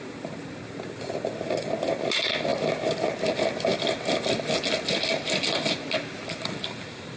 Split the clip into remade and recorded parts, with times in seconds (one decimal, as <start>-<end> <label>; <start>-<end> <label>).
0.0-7.2 recorded